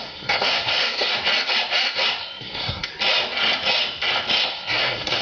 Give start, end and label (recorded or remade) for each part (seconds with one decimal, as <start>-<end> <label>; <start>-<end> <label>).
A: 0.0-1.1 remade; 1.1-2.2 recorded; 2.2-2.9 remade; 2.9-4.4 recorded; 4.4-5.2 remade